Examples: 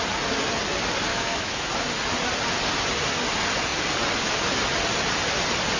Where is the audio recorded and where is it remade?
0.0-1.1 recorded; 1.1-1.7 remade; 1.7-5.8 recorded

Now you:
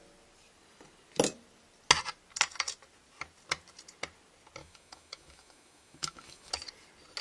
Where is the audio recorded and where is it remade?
0.0-4.6 recorded; 4.6-6.5 remade; 6.5-7.2 recorded

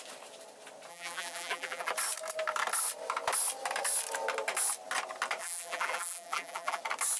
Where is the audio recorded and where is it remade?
0.0-0.9 recorded; 0.9-1.9 remade; 1.9-5.4 recorded; 5.4-6.8 remade; 6.8-7.2 recorded